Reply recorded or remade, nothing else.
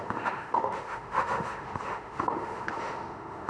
remade